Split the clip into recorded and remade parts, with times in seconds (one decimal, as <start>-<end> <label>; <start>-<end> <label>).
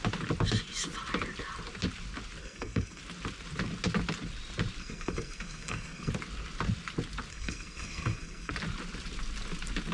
0.0-2.4 recorded; 2.4-3.0 remade; 3.0-4.8 recorded; 4.8-6.1 remade; 6.1-7.3 recorded; 7.3-8.5 remade; 8.5-9.9 recorded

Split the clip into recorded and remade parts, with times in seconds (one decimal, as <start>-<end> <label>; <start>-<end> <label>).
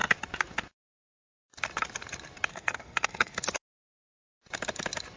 0.0-2.5 recorded; 2.5-3.4 remade; 3.4-5.2 recorded